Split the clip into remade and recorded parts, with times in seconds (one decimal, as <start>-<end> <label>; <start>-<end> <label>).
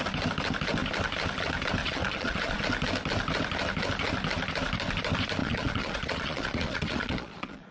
0.0-1.8 recorded; 1.8-2.6 remade; 2.6-5.4 recorded; 5.4-7.7 remade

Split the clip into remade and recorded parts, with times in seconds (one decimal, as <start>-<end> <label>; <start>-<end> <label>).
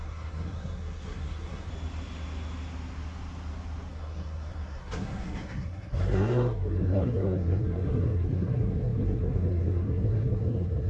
0.0-1.7 remade; 1.7-3.9 recorded; 3.9-10.9 remade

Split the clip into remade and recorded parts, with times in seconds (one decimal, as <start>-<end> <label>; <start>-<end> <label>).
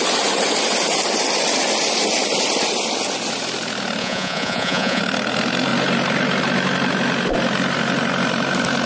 0.0-4.0 recorded; 4.0-5.0 remade; 5.0-8.9 recorded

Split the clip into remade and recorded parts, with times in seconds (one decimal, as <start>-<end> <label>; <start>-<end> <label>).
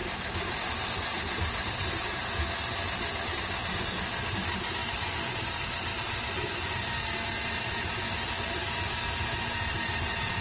0.0-10.4 recorded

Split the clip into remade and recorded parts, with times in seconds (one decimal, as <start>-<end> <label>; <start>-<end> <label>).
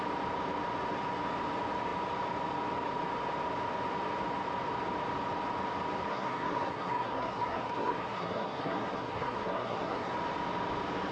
0.0-6.1 recorded; 6.1-10.1 remade; 10.1-11.1 recorded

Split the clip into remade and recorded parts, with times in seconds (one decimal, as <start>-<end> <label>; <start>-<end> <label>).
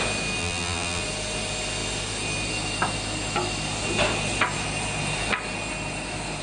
0.0-0.4 recorded; 0.4-1.0 remade; 1.0-6.4 recorded